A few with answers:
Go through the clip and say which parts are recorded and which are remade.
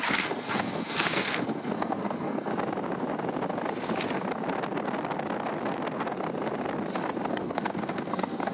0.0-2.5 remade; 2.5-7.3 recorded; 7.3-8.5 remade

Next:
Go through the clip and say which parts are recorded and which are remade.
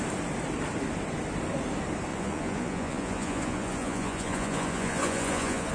0.0-2.1 recorded; 2.1-5.7 remade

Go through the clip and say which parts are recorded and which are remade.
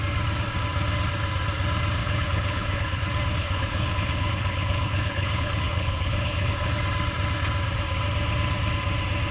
0.0-2.0 recorded; 2.0-3.0 remade; 3.0-3.4 recorded; 3.4-6.7 remade; 6.7-9.3 recorded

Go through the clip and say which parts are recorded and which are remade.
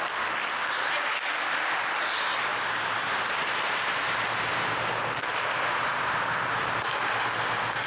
0.0-2.5 recorded; 2.5-6.9 remade; 6.9-7.9 recorded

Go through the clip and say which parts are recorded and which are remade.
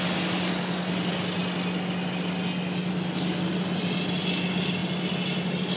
0.0-5.8 recorded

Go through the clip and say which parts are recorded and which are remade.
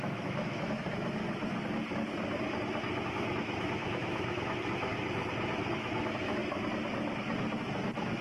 0.0-1.2 remade; 1.2-3.1 recorded; 3.1-4.9 remade; 4.9-5.5 recorded; 5.5-6.4 remade; 6.4-8.2 recorded